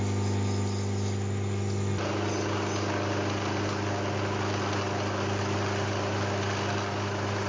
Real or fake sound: real